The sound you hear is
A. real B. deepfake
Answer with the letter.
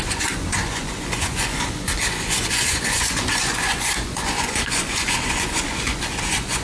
B